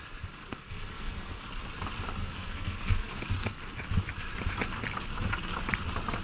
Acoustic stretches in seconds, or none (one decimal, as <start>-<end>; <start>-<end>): 0.0-0.4; 1.4-2.2; 3.2-6.2